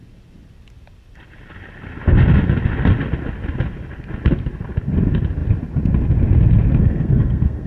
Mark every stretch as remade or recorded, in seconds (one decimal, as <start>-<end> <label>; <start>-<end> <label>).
0.0-6.8 recorded; 6.8-7.7 remade